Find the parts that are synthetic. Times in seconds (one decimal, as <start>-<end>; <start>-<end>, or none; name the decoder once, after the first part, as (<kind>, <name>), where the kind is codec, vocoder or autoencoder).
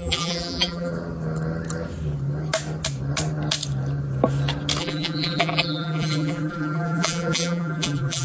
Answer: 0.0-0.9 (vocoder, BigVGAN v2); 4.8-8.2